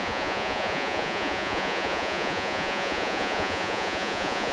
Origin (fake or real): fake